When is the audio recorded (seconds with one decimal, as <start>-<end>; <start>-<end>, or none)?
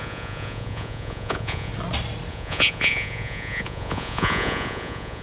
1.7-2.3